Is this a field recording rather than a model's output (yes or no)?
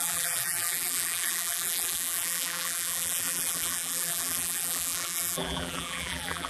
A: no